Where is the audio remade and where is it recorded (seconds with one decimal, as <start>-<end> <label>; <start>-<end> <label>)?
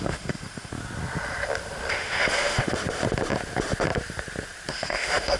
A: 0.0-0.7 remade; 0.7-1.9 recorded; 1.9-2.6 remade; 2.6-4.7 recorded; 4.7-5.4 remade